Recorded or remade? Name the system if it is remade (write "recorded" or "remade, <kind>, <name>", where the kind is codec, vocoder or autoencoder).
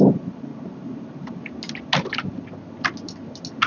recorded